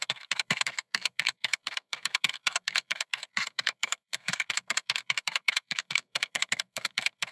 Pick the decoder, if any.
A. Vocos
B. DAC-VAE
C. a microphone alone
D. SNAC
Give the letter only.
D